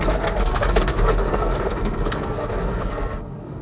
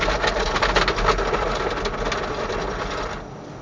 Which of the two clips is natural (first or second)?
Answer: second